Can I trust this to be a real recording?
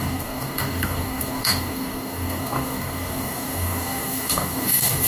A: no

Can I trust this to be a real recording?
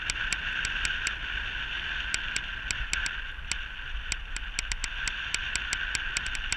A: yes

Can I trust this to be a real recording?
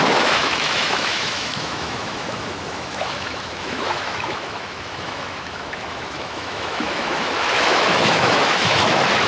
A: no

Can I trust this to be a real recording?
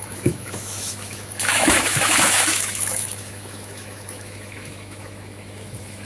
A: no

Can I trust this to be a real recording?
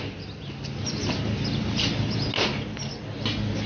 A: yes